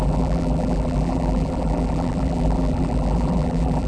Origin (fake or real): fake